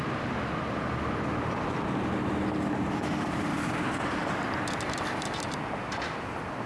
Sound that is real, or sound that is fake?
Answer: real